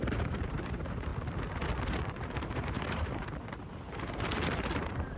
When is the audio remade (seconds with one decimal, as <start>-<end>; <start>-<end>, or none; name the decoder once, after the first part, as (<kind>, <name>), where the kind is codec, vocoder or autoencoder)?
0.0-1.1 (vocoder, BigVGAN v2); 1.8-5.2